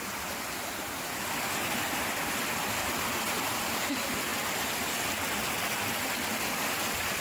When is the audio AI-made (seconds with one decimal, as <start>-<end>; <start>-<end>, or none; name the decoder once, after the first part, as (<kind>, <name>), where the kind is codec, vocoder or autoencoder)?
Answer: 2.8-3.9 (vocoder, BigVGAN v2)